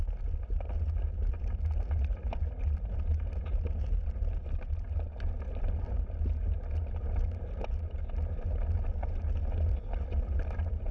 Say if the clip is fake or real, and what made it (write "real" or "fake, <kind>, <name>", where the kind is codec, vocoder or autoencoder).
real